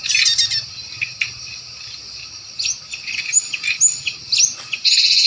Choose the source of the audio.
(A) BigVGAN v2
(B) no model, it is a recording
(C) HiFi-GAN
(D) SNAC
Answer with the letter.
B